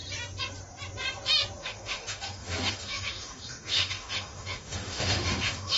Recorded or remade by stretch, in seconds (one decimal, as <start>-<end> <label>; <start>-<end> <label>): 0.0-1.6 recorded; 1.6-5.8 remade